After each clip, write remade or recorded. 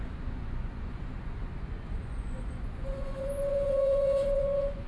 remade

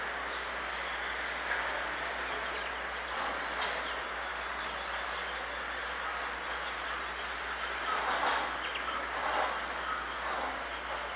recorded